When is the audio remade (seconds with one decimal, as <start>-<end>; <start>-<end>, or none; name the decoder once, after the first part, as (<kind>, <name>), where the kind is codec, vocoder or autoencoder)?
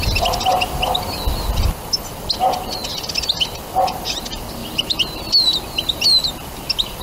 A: 4.6-5.2 (vocoder, BigVGAN v2)